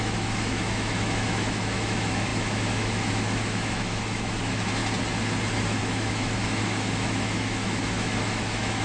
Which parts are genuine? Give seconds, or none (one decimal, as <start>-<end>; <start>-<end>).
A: 4.8-5.8